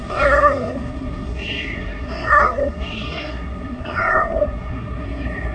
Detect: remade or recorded remade